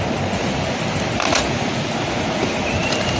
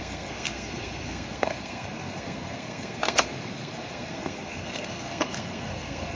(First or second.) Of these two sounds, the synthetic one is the second